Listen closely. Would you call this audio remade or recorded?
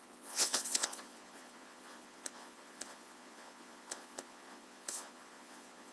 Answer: remade